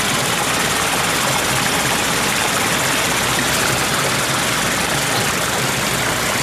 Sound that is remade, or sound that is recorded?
recorded